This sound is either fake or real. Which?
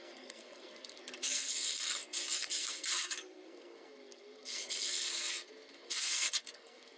fake